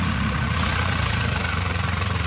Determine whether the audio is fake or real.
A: fake